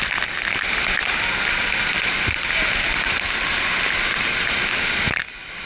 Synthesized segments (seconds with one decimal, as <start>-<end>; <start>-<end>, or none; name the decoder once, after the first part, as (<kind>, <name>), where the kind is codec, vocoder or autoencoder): none